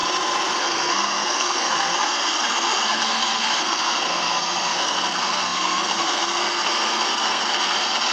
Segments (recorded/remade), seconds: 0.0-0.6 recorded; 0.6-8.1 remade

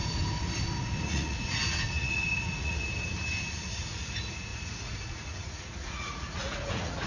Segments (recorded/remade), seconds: 0.0-1.0 recorded; 1.0-2.8 remade; 2.8-3.7 recorded; 3.7-7.1 remade

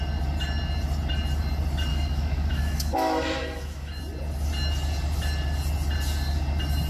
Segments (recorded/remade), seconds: 0.0-1.9 recorded; 1.9-4.0 remade; 4.0-6.9 recorded